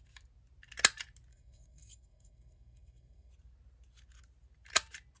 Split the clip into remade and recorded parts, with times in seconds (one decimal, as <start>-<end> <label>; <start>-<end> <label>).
0.0-1.3 recorded; 1.3-3.3 remade; 3.3-5.2 recorded